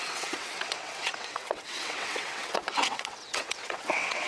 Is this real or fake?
fake